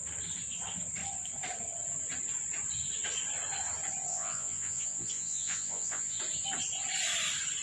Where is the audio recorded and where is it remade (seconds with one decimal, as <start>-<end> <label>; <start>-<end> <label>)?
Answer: 0.0-4.1 recorded; 4.1-6.2 remade; 6.2-7.6 recorded